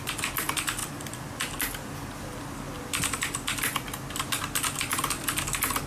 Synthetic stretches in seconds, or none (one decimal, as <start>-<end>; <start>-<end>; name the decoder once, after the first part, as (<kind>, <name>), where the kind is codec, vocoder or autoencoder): none